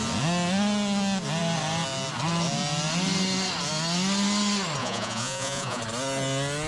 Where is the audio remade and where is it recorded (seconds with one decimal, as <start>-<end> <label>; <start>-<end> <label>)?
0.0-4.8 recorded; 4.8-5.8 remade; 5.8-6.7 recorded